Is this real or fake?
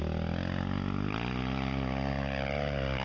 real